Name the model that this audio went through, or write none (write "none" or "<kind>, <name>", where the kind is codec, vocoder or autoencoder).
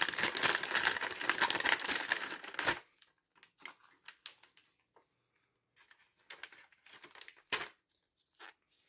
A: none